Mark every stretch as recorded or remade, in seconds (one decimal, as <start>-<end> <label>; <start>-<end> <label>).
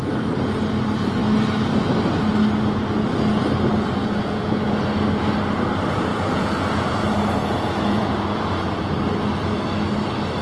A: 0.0-4.0 recorded; 4.0-4.7 remade; 4.7-6.1 recorded; 6.1-8.7 remade; 8.7-10.4 recorded